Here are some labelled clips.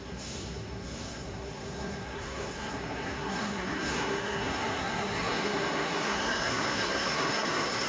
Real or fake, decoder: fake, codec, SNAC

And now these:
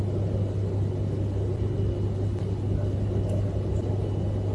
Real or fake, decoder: real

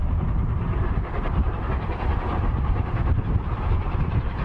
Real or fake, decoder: fake, vocoder, BigVGAN v2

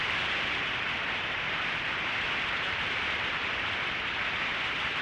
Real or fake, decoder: fake, vocoder, BigVGAN v2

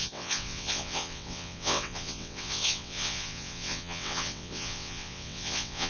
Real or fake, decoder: fake, vocoder, WaveNeXt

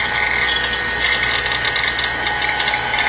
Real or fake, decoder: real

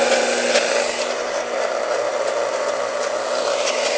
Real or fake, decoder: real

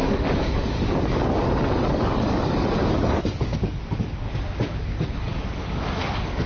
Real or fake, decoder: fake, codec, DAC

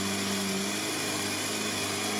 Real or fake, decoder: real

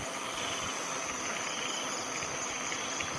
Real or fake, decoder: real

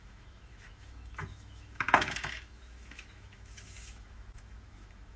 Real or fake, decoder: fake, autoencoder, DAC-VAE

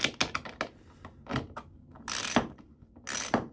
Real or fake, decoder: real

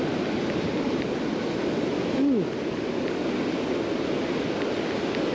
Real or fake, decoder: real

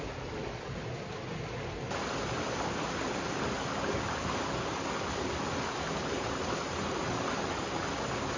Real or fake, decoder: real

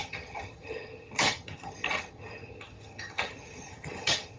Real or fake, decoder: fake, vocoder, HiFi-GAN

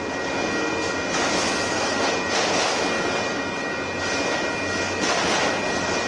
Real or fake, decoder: real